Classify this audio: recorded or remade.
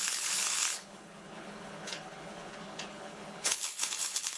remade